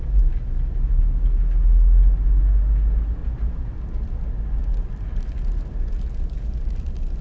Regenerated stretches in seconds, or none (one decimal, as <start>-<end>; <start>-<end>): 3.2-3.8